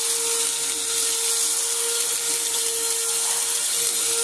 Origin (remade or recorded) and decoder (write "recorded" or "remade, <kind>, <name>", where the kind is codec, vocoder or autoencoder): recorded